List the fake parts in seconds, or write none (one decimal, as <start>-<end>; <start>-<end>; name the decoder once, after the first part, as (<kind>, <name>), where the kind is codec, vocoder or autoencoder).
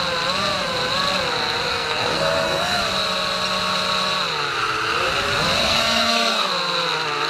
1.7-2.8 (codec, SNAC); 5.6-6.5